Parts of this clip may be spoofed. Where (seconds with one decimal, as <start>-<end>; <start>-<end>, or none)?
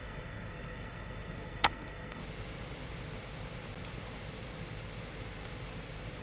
0.0-2.2